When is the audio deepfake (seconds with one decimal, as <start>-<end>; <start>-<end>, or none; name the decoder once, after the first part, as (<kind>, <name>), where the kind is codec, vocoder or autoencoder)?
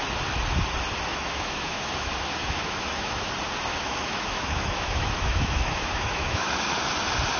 1.1-3.3 (autoencoder, DAC-VAE); 3.7-6.5